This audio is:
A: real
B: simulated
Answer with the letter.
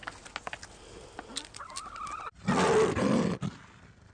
A